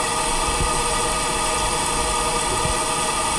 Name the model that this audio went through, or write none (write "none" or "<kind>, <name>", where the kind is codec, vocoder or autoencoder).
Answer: none